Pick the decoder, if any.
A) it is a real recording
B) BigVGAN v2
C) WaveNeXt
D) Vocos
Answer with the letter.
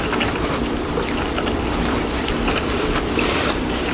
B